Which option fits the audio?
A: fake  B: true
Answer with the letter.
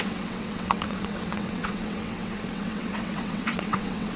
A